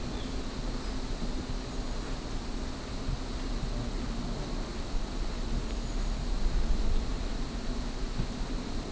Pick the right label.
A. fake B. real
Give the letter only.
B